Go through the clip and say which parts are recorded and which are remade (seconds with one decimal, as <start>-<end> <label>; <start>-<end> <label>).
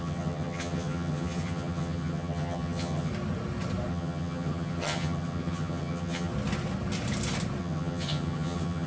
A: 0.0-3.1 remade; 3.1-3.9 recorded; 3.9-6.3 remade; 6.3-7.6 recorded; 7.6-8.9 remade